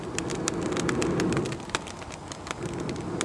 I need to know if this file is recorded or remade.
recorded